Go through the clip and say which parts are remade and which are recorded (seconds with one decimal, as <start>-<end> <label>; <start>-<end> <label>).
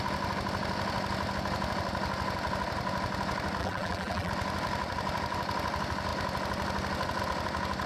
0.0-3.6 recorded; 3.6-4.3 remade; 4.3-7.9 recorded